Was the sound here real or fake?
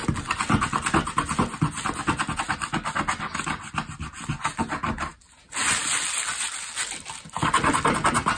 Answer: real